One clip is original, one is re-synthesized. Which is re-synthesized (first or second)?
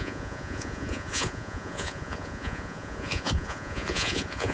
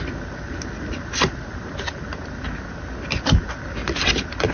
first